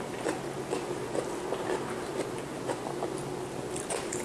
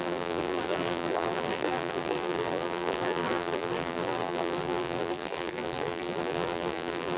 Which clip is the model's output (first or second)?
second